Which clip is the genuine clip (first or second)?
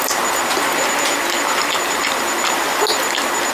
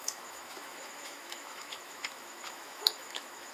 first